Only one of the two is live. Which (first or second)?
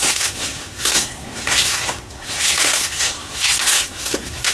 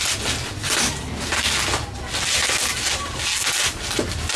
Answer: second